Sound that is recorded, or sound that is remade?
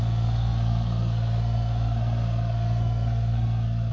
remade